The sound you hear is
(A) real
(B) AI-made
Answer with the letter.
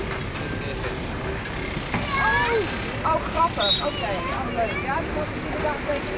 A